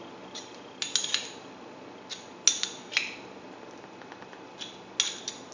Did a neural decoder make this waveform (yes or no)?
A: no